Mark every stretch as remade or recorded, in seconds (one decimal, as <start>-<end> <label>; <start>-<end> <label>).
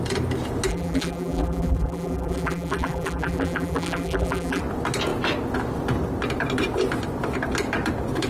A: 0.0-0.7 recorded; 0.7-4.6 remade; 4.6-8.3 recorded